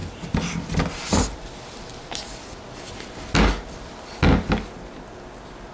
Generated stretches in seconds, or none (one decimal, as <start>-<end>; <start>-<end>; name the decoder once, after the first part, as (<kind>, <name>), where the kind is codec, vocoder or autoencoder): none